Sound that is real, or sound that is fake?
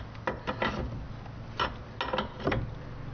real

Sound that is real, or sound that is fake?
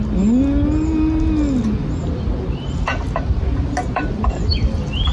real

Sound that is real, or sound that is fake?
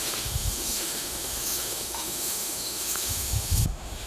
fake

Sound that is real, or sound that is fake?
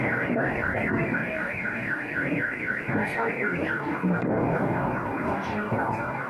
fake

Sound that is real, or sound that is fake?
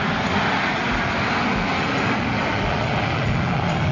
real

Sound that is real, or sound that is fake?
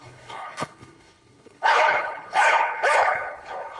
fake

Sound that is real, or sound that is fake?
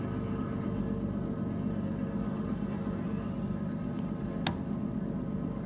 real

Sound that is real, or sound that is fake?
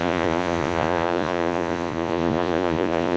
fake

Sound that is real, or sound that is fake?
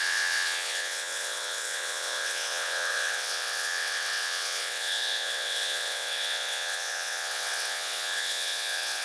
fake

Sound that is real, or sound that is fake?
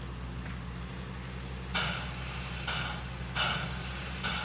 real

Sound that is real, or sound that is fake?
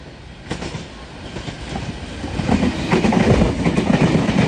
real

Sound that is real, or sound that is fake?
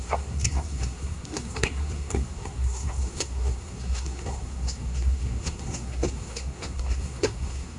fake